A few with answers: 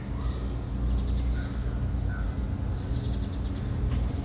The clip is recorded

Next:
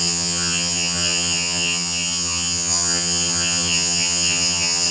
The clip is remade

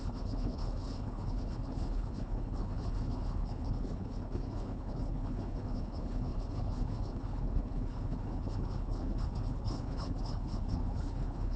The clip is remade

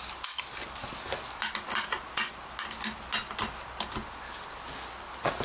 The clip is recorded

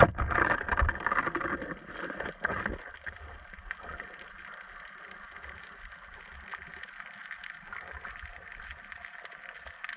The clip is recorded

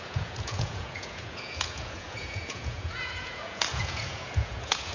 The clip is remade